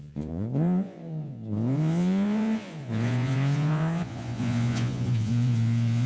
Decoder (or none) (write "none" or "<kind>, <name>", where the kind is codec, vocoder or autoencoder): vocoder, Vocos